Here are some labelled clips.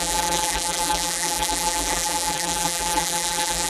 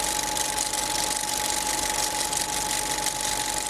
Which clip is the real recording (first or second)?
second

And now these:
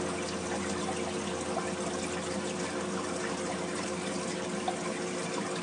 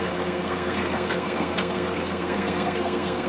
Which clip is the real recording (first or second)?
first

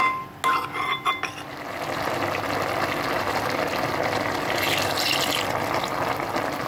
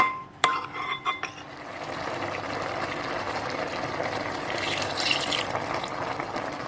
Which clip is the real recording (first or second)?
first